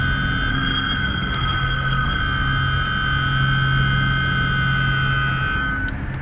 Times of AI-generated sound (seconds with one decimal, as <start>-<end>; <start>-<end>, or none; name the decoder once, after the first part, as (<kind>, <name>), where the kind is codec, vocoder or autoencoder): 0.5-2.2 (codec, SNAC)